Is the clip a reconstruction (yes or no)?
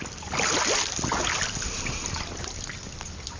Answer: no